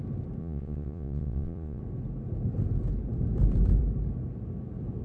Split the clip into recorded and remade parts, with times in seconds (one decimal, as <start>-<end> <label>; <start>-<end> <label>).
0.0-0.4 recorded; 0.4-1.8 remade; 1.8-5.0 recorded